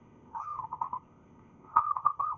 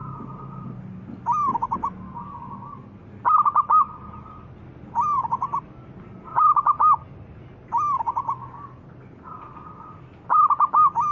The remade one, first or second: first